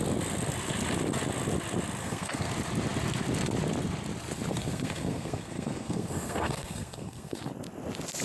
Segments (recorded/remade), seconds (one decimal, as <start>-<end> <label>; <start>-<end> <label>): 0.0-2.0 recorded; 2.0-2.5 remade; 2.5-4.5 recorded; 4.5-7.4 remade; 7.4-8.2 recorded

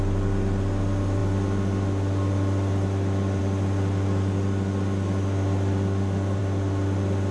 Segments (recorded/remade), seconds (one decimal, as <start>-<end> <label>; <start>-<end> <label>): 0.0-7.3 recorded

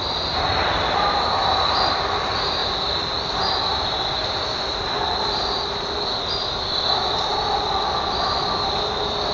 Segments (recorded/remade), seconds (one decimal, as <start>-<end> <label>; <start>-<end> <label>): 0.0-9.3 recorded